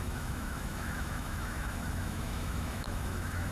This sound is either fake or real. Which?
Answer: fake